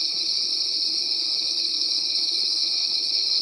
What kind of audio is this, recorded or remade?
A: remade